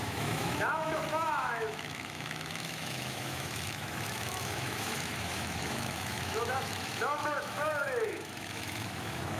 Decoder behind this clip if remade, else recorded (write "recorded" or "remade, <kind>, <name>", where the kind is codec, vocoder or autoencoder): remade, autoencoder, DAC-VAE